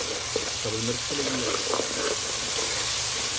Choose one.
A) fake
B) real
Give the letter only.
B